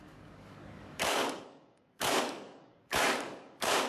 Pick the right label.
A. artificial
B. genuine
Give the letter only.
A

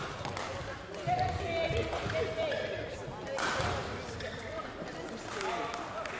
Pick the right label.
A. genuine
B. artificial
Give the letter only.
A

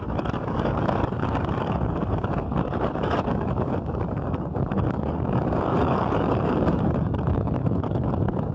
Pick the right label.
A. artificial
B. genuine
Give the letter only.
A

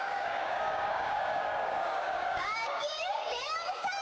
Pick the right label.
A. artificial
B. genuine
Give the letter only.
A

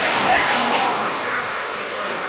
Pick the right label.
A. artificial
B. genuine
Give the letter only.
A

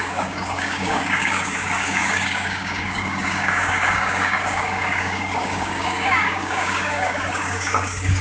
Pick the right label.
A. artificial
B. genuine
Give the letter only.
A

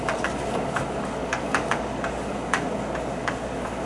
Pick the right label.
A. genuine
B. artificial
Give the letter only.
B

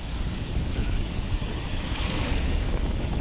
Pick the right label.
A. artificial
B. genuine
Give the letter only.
A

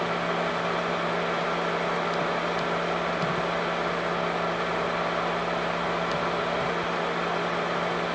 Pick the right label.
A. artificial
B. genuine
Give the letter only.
B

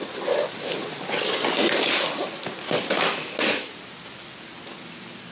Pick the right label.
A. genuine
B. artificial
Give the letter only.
A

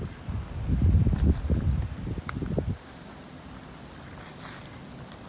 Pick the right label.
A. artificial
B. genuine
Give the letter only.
B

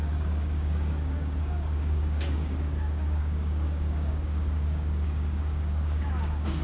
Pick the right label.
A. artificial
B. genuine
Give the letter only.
A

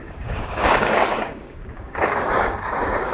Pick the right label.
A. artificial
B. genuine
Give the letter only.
A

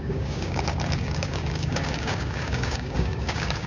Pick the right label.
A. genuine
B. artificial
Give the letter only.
B